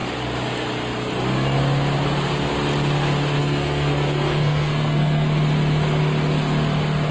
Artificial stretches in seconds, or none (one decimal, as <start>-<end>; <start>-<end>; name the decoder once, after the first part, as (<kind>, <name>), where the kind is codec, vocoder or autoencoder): 3.4-5.4 (codec, SNAC)

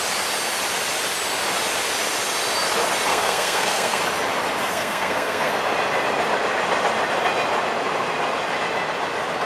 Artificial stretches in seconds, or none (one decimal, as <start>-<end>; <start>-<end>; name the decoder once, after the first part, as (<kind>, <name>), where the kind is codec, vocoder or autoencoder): 3.1-4.0 (codec, SNAC); 4.7-5.5

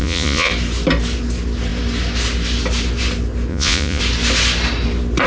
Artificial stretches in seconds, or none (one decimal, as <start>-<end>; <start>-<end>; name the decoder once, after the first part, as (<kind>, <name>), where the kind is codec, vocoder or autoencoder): 0.0-0.5 (vocoder, Vocos); 3.5-4.0

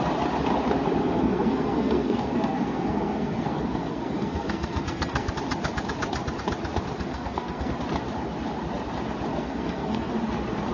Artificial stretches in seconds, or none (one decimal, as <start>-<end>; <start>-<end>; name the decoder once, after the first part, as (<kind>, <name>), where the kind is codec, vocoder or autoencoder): 1.0-5.3 (codec, SNAC); 7.1-7.7; 9.3-10.1

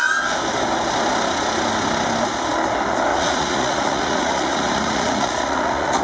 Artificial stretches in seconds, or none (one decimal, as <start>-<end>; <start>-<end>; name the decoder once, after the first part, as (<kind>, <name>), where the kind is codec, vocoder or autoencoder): 3.1-6.0 (vocoder, Vocos)

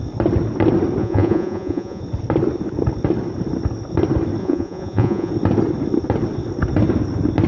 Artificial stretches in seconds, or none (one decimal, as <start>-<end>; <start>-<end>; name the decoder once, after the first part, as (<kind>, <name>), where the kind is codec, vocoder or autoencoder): 1.0-2.0 (vocoder, Vocos); 4.4-5.3

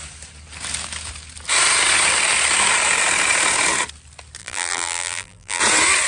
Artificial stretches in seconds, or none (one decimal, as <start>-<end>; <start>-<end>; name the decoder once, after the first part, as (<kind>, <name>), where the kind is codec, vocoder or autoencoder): 4.4-5.6 (vocoder, BigVGAN v2)

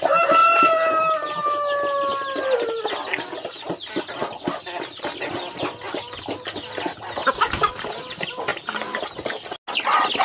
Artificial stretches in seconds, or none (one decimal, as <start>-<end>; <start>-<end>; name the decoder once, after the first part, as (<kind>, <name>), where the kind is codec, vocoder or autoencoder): 8.5-9.1 (vocoder, BigVGAN v2)